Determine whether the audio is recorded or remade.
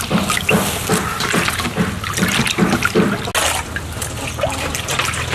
recorded